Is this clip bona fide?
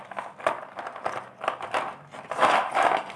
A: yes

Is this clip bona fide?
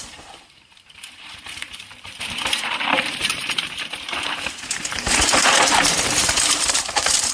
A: no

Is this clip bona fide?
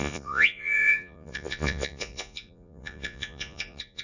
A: no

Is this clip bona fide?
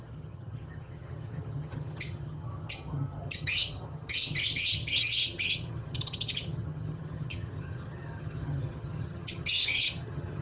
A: no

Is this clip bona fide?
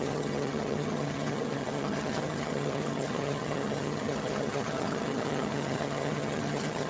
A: no